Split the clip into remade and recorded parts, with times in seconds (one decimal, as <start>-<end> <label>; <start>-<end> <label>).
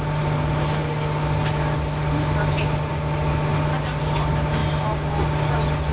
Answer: 0.0-5.9 recorded